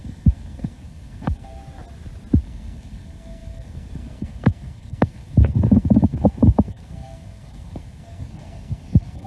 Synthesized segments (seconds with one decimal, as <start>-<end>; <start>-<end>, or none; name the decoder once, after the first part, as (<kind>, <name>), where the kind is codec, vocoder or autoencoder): 0.0-1.6 (codec, SNAC); 2.4-9.3